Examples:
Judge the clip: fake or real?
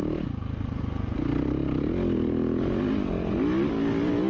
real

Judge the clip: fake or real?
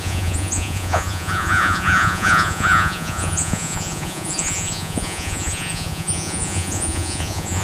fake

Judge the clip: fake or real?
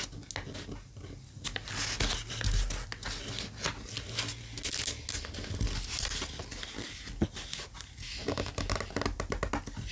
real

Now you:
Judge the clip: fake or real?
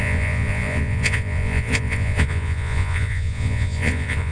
fake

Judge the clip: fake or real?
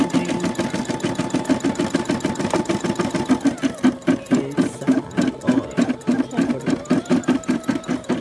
real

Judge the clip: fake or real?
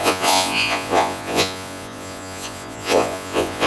fake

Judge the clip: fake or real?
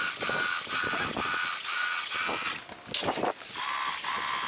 real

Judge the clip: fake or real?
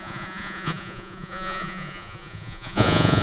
fake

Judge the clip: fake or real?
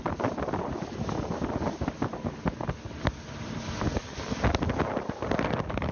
real